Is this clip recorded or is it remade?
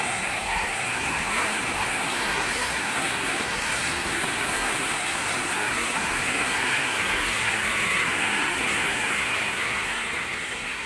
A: remade